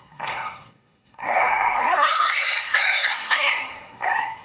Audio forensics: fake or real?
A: fake